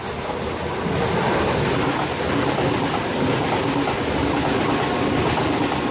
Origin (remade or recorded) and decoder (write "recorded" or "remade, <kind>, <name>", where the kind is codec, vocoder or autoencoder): recorded